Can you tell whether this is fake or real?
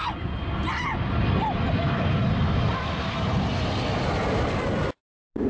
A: real